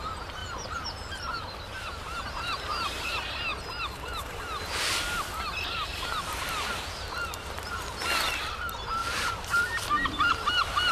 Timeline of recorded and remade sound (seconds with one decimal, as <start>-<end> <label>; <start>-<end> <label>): 0.0-0.4 recorded; 0.4-2.2 remade; 2.2-3.5 recorded; 3.5-5.3 remade; 5.3-5.9 recorded; 5.9-6.7 remade; 6.7-9.0 recorded; 9.0-10.3 remade; 10.3-10.9 recorded